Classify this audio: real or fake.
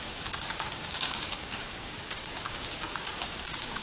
fake